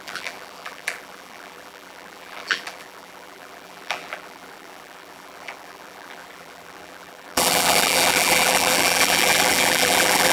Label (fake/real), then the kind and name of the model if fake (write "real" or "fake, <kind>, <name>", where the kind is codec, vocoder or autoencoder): fake, vocoder, BigVGAN v2